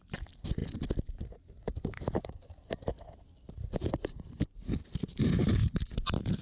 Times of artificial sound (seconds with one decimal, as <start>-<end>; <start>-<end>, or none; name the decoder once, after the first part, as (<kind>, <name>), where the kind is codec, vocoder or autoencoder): 1.7-4.4 (vocoder, BigVGAN v2)